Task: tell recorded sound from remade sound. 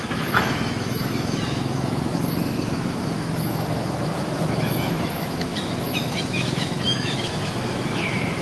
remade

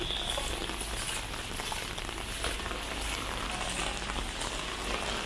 recorded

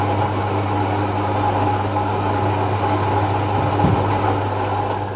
recorded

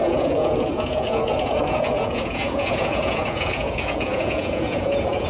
remade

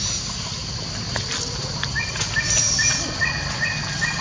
recorded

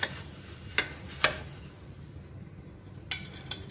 recorded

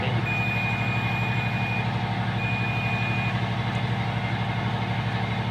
recorded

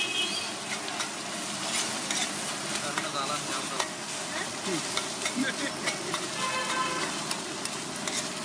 recorded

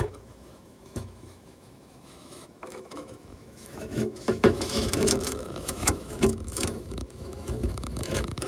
remade